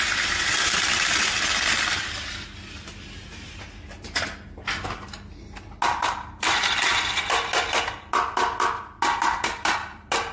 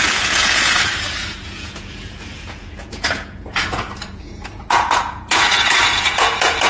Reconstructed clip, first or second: second